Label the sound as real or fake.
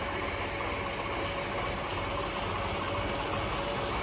real